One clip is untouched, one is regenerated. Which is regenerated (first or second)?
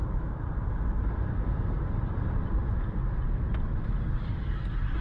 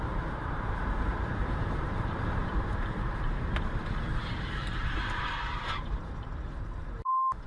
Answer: second